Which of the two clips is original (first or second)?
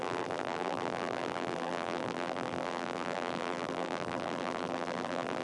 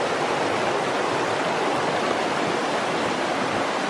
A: second